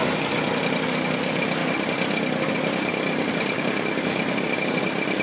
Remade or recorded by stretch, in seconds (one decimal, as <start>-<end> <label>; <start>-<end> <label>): 0.0-5.2 recorded